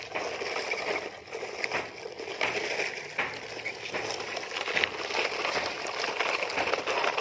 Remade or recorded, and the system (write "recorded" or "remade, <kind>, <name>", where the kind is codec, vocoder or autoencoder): recorded